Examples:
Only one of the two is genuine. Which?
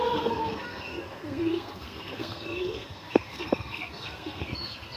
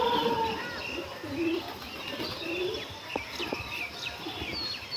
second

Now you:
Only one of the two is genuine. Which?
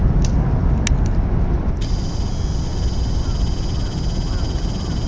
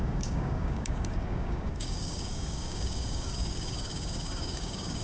first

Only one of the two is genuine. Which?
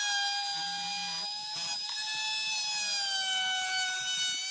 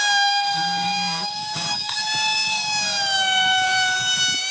first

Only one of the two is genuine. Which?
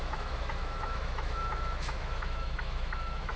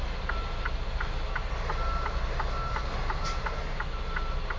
second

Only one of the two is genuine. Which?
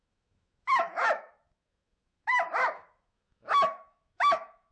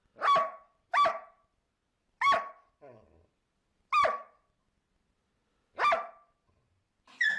second